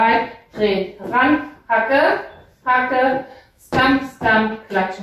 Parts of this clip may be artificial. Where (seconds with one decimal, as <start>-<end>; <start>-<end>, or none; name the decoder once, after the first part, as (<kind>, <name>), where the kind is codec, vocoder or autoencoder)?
3.3-3.8 (autoencoder, DAC-VAE)